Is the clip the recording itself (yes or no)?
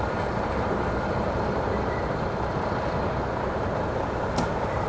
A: no